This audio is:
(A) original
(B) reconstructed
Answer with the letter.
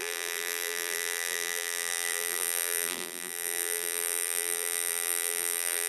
B